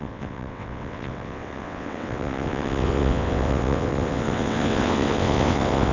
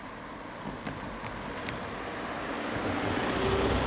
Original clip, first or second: second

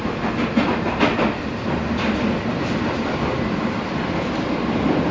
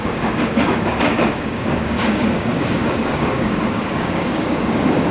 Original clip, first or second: first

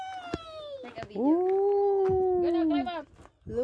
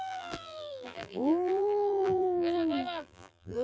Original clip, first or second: first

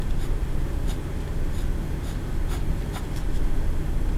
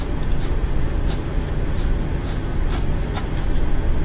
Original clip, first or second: second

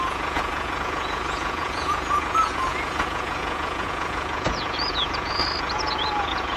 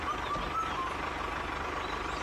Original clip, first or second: second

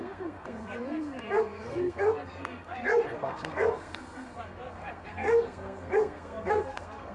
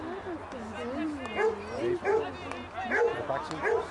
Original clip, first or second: second